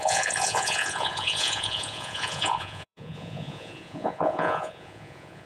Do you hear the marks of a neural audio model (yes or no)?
yes